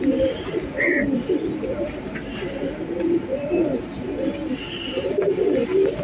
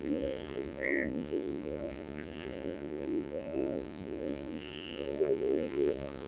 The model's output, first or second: second